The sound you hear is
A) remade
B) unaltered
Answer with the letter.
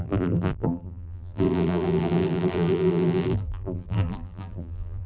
A